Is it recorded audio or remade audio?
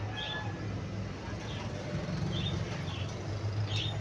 recorded